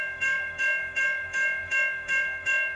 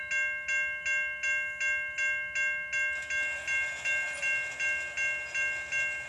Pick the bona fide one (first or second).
second